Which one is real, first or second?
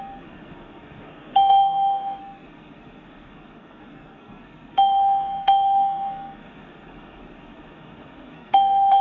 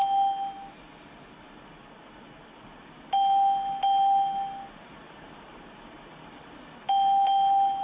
second